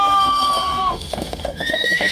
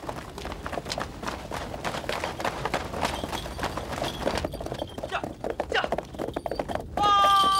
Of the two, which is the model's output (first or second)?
first